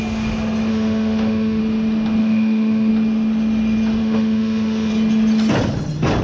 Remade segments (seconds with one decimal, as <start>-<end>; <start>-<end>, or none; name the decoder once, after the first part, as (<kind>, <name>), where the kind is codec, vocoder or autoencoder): 0.7-1.6 (autoencoder, DAC-VAE); 2.2-2.9; 4.0-4.9